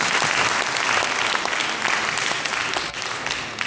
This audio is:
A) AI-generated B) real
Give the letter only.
B